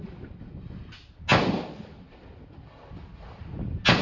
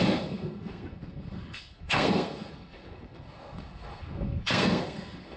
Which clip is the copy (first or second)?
second